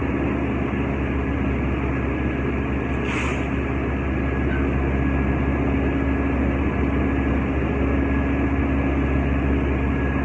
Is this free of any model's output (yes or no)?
yes